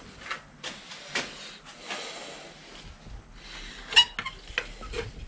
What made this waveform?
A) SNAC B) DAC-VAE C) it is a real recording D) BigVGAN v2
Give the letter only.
C